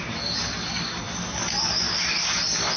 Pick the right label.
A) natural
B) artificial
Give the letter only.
A